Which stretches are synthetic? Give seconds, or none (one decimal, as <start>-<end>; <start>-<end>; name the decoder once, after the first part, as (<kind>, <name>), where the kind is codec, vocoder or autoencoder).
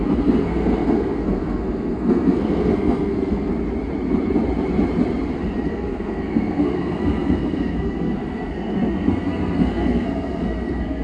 0.0-3.5 (codec, SNAC); 5.7-11.0